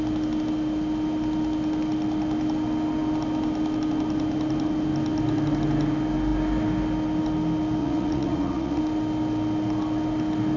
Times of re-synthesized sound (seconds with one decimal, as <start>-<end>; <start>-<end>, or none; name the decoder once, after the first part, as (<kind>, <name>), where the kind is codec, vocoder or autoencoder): 7.8-8.8 (vocoder, Vocos)